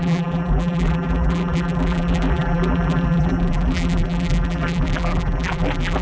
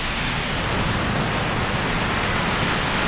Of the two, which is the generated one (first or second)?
first